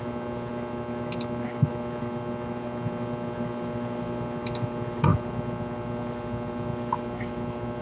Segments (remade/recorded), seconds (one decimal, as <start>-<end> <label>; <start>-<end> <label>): 0.0-7.8 recorded